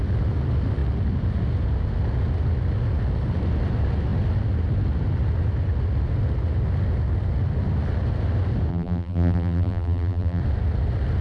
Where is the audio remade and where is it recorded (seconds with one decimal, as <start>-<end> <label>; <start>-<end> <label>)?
0.0-8.7 recorded; 8.7-10.4 remade; 10.4-11.2 recorded